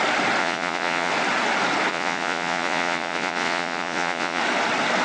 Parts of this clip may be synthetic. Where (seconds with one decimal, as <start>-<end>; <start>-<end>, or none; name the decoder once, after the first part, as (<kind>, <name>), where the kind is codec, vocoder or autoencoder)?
0.4-1.1 (vocoder, Vocos); 1.9-4.4